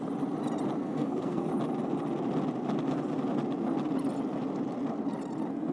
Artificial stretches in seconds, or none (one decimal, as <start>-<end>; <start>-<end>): 0.8-1.5